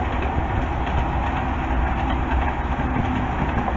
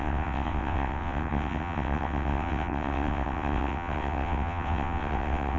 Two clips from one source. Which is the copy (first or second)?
second